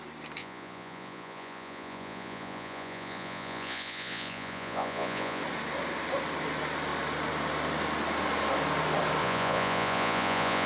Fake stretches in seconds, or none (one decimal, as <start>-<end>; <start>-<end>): 0.4-5.4; 9.2-10.7